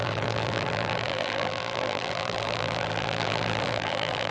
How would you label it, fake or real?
fake